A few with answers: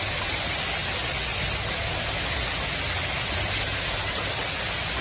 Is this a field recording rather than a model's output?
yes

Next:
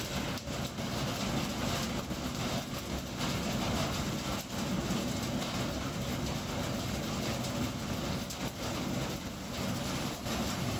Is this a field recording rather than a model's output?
yes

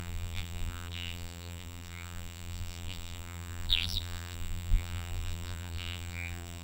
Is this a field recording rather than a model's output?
no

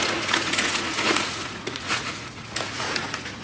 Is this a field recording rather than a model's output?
no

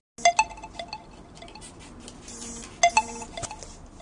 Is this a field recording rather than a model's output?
yes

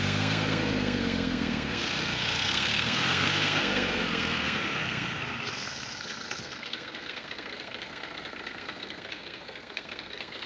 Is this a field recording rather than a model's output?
no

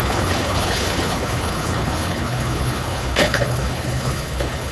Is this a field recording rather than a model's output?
no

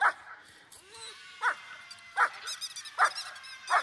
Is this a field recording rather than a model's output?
yes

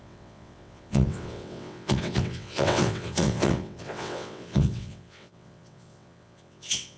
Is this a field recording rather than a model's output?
no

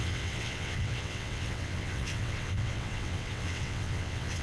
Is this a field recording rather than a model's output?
no